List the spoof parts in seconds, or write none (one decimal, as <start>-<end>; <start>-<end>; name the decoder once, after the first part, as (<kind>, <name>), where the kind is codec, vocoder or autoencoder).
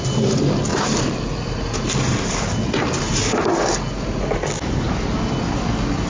0.7-2.4 (vocoder, BigVGAN v2)